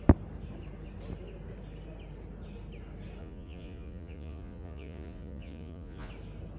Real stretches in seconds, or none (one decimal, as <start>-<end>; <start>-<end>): 0.0-3.2; 6.1-6.6